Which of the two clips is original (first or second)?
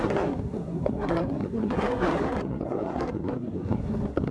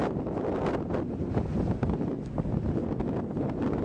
second